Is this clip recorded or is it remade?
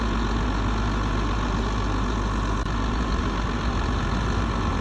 recorded